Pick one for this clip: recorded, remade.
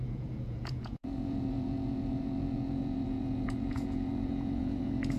remade